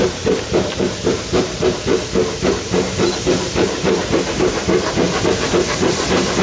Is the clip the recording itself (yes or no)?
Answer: no